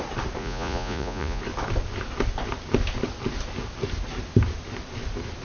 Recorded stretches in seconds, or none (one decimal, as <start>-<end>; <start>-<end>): 0.0-0.4; 1.4-5.4